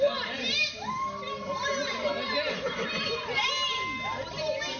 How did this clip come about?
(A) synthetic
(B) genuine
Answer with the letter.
B